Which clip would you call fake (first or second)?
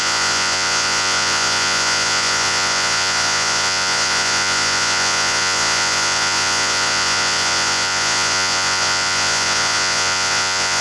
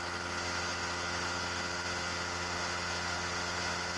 first